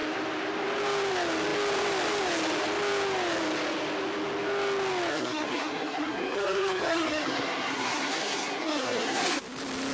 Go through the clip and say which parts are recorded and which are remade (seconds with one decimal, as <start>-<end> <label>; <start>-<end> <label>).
0.0-5.1 recorded; 5.1-9.4 remade; 9.4-9.9 recorded